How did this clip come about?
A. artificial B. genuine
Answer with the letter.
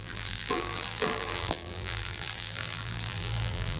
A